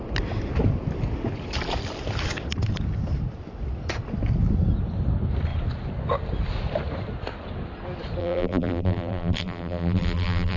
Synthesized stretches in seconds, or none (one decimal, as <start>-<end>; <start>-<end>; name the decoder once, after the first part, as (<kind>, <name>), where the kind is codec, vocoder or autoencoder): 8.2-10.6 (vocoder, BigVGAN v2)